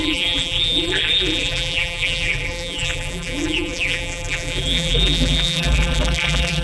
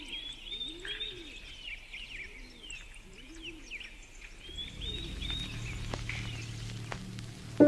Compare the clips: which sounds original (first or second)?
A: second